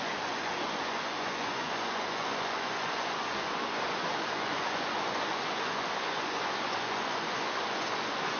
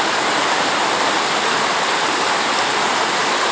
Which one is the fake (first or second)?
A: first